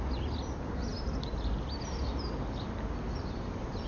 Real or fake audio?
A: real